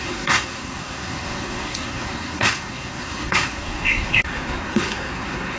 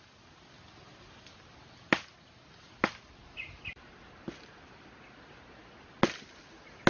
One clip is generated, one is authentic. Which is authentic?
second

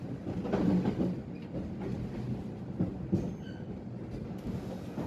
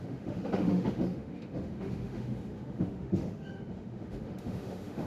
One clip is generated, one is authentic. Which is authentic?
first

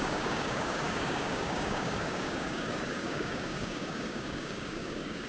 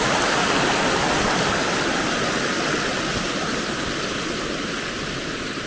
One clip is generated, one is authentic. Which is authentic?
second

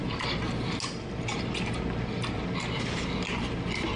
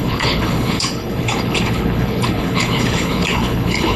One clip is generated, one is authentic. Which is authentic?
first